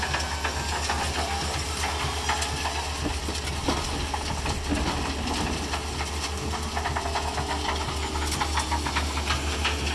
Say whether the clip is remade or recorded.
recorded